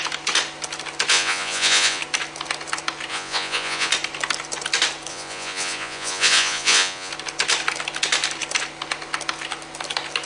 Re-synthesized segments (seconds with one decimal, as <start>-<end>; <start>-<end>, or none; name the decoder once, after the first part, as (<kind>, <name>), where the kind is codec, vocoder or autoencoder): 1.1-2.0 (vocoder, Vocos); 3.1-3.9; 5.1-7.1